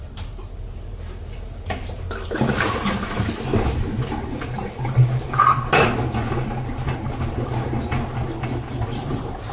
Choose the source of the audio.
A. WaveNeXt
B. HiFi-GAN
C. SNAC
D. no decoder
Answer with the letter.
D